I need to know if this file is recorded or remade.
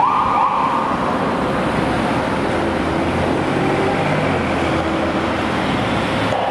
recorded